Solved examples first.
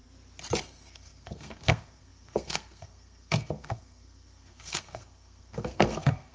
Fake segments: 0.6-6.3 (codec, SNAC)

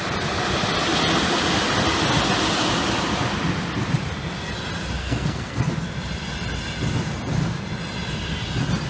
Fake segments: 5.0-5.7 (codec, SNAC)

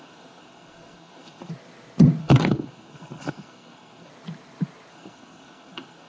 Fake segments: 0.0-1.5 (codec, SNAC); 2.2-4.1; 4.9-6.1

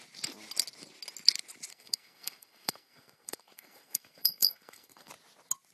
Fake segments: 1.7-5.1 (codec, SNAC)

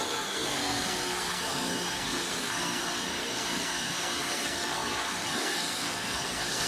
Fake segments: 0.0-6.7 (codec, SNAC)

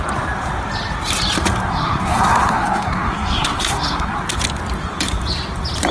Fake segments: 1.7-4.2 (codec, SNAC)